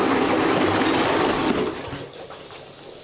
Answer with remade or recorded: recorded